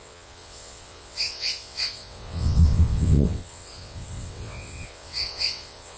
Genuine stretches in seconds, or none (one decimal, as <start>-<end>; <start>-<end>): none